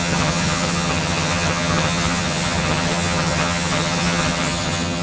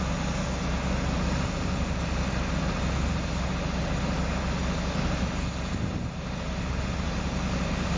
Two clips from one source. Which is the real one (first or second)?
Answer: second